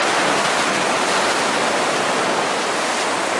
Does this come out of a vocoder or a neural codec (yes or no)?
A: no